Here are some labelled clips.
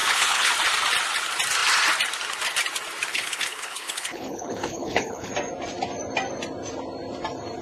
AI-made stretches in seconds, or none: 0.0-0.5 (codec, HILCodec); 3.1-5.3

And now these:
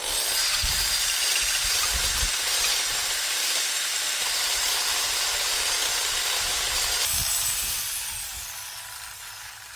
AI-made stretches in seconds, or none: 0.6-2.2 (vocoder, BigVGAN v2); 3.0-5.2

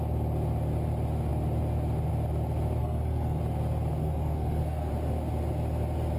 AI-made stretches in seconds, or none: 2.8-3.4 (codec, SNAC); 4.0-4.9

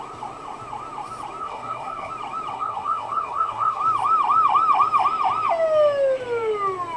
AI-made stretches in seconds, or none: 1.4-2.1 (codec, SNAC); 2.5-3.8